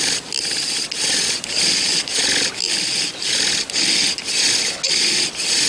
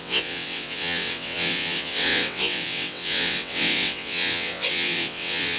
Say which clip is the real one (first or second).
first